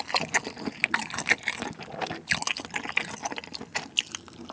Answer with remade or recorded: recorded